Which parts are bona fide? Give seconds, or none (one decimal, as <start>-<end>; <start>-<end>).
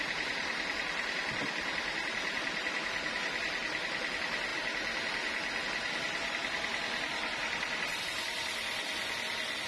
0.0-9.7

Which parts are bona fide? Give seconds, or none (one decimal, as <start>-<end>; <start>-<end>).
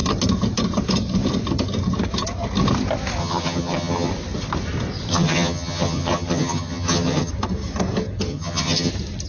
0.0-3.2; 4.1-5.1; 7.3-8.3; 8.9-9.3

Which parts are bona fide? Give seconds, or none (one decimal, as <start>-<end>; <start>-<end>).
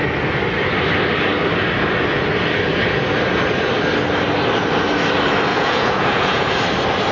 0.0-5.5; 6.5-7.1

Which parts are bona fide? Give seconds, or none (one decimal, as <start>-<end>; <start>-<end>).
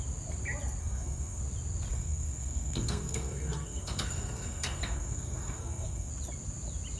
0.0-0.8; 1.4-1.9; 6.1-7.0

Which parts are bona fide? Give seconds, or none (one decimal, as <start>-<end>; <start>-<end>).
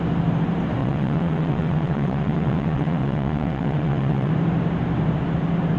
0.0-0.8; 4.3-5.8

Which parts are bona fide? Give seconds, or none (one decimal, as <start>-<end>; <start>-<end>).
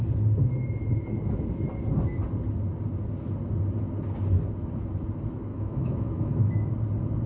0.0-5.5; 6.7-7.3